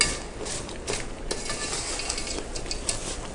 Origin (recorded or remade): recorded